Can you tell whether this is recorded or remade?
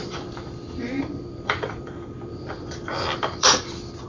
remade